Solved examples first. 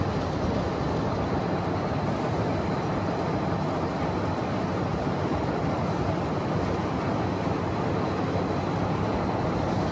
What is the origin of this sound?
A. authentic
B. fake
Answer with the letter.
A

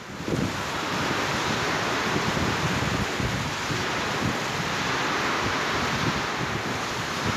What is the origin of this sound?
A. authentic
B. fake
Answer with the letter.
A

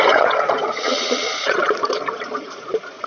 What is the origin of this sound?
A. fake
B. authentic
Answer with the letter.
A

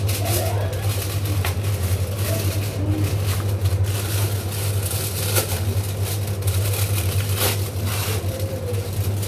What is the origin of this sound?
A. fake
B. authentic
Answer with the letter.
B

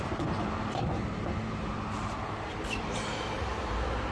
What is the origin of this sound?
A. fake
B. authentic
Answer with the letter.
A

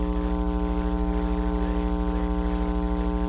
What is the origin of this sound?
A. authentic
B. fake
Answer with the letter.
A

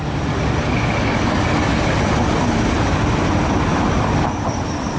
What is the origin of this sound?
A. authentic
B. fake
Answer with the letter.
A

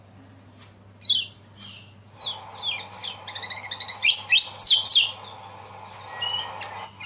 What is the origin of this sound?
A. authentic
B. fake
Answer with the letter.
A